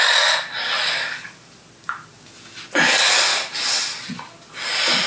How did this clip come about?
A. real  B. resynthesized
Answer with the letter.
A